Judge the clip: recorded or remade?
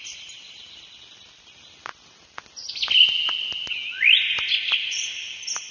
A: recorded